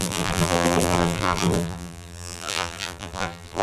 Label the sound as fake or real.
fake